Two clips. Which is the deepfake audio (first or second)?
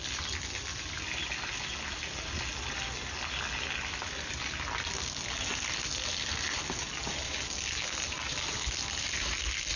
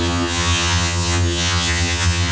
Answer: second